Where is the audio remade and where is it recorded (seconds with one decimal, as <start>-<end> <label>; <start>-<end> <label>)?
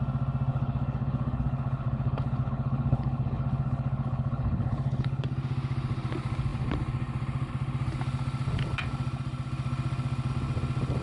0.0-0.5 recorded; 0.5-5.2 remade; 5.2-11.0 recorded